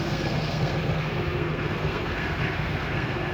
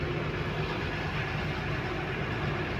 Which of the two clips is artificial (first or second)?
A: first